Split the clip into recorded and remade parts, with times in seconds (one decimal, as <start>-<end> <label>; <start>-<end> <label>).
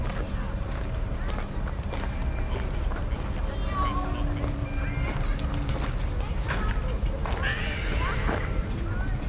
0.0-7.2 recorded; 7.2-8.9 remade; 8.9-9.3 recorded